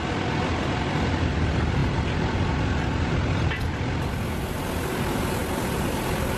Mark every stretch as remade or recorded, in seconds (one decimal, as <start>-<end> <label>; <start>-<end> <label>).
0.0-6.4 recorded